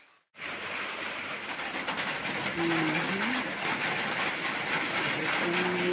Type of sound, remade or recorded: recorded